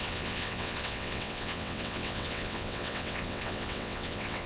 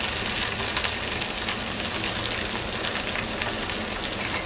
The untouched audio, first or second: second